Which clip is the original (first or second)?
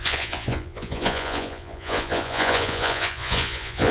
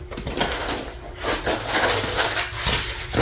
second